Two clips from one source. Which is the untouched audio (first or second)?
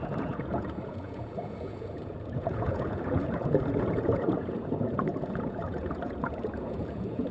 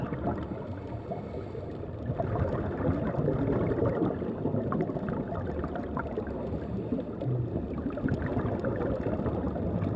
second